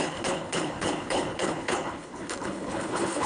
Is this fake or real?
fake